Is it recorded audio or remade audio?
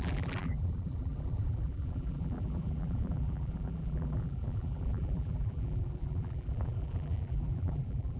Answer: remade